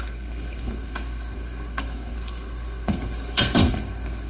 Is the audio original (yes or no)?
no